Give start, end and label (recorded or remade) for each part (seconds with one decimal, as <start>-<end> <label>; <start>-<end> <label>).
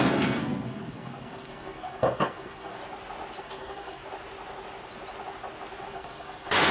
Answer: 0.0-2.8 remade; 2.8-3.4 recorded; 3.4-4.0 remade; 4.0-5.8 recorded; 5.8-6.7 remade